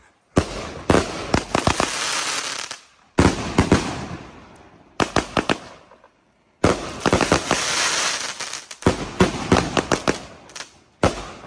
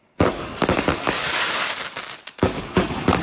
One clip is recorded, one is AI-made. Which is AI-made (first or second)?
second